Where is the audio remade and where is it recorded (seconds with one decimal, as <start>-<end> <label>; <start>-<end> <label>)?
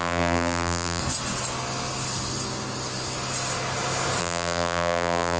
0.0-1.0 remade; 1.0-4.2 recorded; 4.2-5.4 remade